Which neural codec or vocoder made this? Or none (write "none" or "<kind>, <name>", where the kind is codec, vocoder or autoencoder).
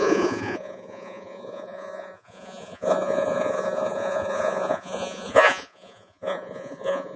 vocoder, Vocos